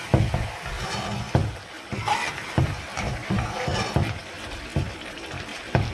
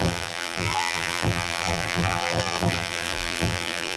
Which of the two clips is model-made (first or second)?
second